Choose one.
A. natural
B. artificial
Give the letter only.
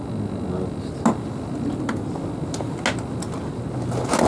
A